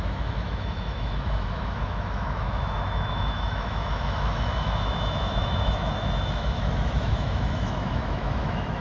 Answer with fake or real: fake